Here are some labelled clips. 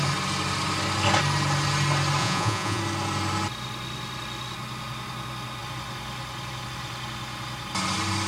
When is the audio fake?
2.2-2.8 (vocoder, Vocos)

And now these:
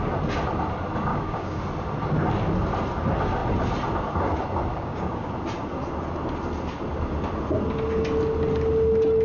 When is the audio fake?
1.1-1.6 (codec, DAC); 4.7-5.3